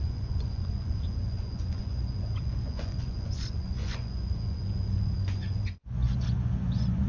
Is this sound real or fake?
fake